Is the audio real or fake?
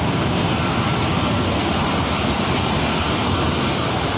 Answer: real